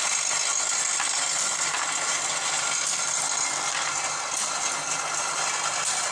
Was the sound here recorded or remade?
recorded